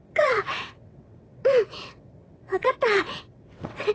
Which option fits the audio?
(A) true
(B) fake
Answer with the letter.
B